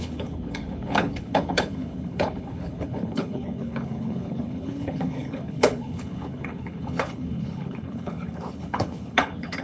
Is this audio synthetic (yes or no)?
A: yes